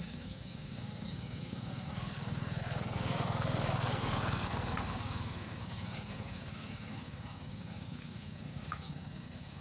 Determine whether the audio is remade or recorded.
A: remade